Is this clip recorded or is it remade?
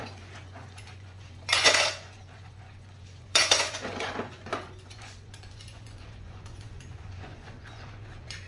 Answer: remade